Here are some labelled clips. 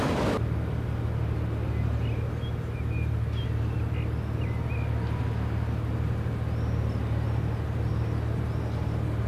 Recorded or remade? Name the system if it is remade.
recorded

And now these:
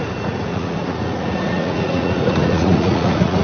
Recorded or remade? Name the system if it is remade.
remade, vocoder, Vocos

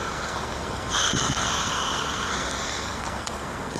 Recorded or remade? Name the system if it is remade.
remade, codec, SNAC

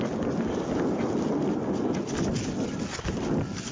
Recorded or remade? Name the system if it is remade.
recorded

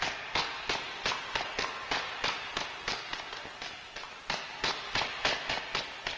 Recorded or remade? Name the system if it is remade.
recorded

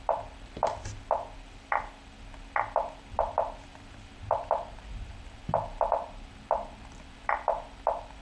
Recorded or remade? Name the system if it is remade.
recorded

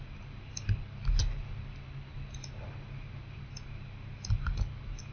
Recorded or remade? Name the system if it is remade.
recorded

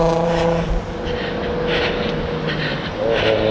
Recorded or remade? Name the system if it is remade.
recorded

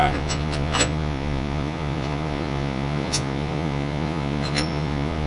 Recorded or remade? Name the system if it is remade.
remade, vocoder, Vocos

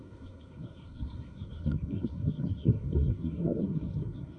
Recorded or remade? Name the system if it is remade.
remade, codec, SNAC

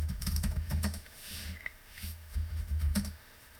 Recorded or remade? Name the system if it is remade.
remade, autoencoder, DAC-VAE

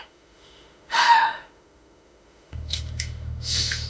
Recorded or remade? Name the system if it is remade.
remade, autoencoder, DAC-VAE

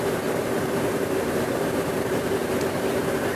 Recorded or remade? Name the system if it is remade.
remade, vocoder, BigVGAN v2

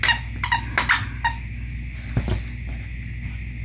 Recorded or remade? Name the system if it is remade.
recorded